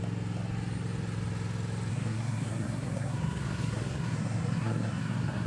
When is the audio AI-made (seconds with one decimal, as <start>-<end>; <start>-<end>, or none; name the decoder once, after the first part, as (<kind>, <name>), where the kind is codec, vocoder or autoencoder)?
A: 1.9-5.5 (codec, SNAC)